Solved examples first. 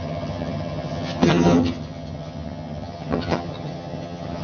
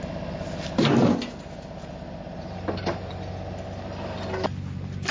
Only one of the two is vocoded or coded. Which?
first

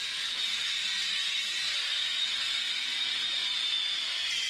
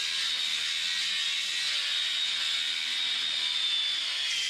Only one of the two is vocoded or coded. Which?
first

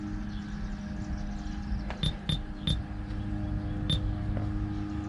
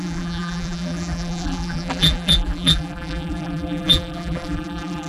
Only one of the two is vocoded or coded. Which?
second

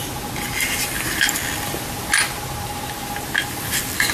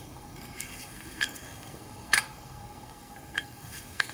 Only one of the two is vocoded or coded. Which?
second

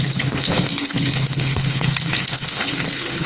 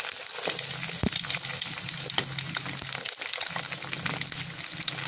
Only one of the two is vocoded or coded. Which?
first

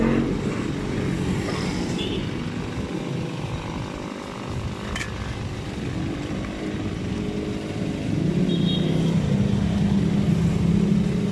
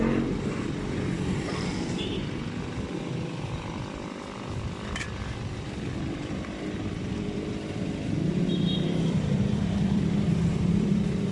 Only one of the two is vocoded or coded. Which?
second